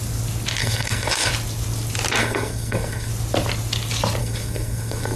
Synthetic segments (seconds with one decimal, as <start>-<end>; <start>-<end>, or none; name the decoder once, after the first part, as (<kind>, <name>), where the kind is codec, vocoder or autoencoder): 0.6-1.3 (codec, SNAC); 2.2-3.1; 4.2-5.2